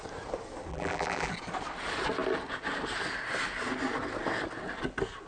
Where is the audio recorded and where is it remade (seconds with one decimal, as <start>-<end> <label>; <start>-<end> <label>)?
0.0-0.7 recorded; 0.7-1.3 remade; 1.3-5.3 recorded